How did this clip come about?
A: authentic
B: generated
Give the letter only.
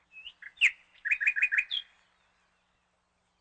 A